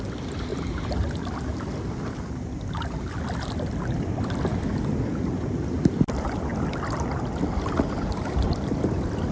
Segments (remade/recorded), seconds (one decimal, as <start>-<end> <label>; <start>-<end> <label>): 0.0-4.5 remade; 4.5-5.8 recorded; 5.8-6.5 remade; 6.5-8.8 recorded; 8.8-9.3 remade